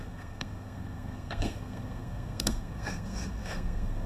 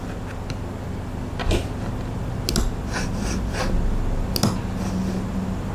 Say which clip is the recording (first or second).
second